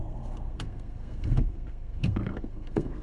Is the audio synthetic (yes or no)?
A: yes